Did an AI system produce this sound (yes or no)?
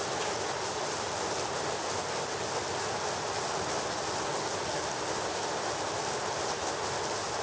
no